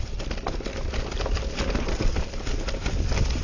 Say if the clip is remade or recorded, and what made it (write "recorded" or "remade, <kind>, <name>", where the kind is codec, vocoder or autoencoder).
recorded